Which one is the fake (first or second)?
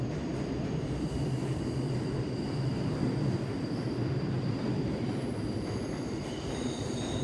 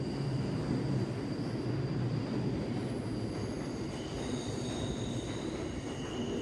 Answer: first